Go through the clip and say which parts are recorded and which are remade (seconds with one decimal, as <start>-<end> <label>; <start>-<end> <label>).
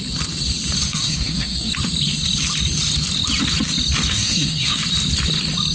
0.0-0.9 recorded; 0.9-1.7 remade; 1.7-4.1 recorded; 4.1-4.8 remade; 4.8-5.7 recorded